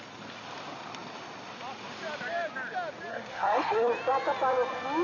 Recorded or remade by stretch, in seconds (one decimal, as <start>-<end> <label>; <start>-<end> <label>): 0.0-3.1 recorded; 3.1-3.9 remade; 3.9-5.0 recorded